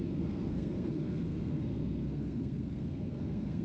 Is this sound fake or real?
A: fake